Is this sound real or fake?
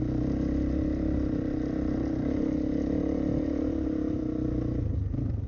real